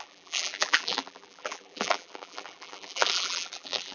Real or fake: fake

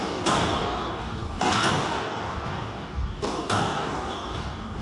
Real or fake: fake